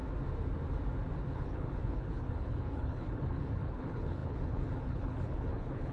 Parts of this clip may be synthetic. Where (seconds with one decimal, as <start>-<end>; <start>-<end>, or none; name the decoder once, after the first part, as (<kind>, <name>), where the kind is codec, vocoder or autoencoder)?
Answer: 1.3-5.9 (codec, HILCodec)